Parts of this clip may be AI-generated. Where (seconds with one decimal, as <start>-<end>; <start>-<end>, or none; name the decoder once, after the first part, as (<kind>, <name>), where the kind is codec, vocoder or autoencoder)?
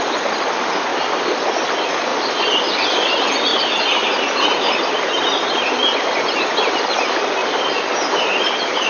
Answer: 0.9-1.5 (vocoder, BigVGAN v2); 2.1-2.7; 7.4-8.4